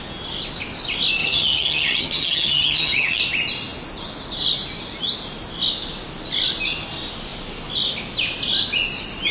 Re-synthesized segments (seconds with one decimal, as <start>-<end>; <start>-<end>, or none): 1.2-3.2

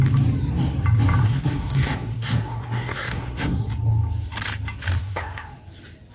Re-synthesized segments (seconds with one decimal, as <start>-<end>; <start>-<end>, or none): 1.2-3.7; 5.0-5.6

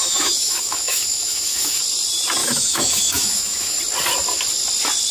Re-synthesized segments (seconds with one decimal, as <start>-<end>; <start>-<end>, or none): 0.0-1.8; 2.4-3.8

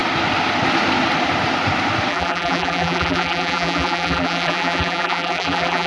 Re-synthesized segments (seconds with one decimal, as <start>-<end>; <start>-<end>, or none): 2.1-5.9